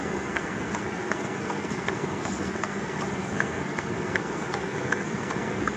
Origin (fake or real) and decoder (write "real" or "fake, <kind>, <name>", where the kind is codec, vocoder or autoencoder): fake, codec, SNAC